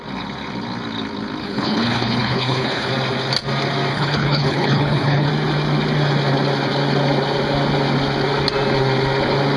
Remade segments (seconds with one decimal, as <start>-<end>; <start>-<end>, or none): 1.4-2.9; 3.9-5.3